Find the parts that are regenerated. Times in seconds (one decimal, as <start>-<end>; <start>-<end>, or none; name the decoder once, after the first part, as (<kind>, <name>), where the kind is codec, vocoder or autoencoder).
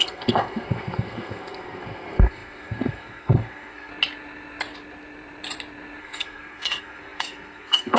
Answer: 0.0-3.9 (codec, SNAC); 6.0-8.0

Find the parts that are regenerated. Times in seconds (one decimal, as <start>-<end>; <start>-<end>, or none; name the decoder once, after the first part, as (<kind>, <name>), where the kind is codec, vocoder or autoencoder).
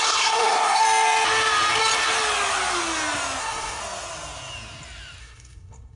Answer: 0.0-0.8 (codec, SNAC); 3.4-3.8; 5.2-6.0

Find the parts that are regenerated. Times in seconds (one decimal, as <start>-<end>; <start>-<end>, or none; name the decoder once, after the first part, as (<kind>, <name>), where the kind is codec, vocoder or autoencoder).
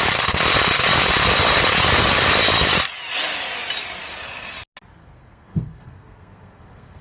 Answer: 5.0-7.0 (codec, SNAC)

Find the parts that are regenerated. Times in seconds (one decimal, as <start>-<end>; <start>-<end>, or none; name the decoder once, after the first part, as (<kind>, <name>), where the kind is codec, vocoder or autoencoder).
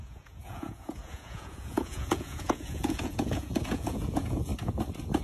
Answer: 0.0-4.5 (vocoder, Vocos)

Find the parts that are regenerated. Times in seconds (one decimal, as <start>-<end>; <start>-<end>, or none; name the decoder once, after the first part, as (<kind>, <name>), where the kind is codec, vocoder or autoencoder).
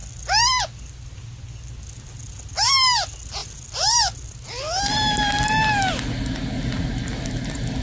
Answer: none